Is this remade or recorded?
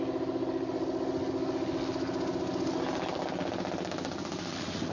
recorded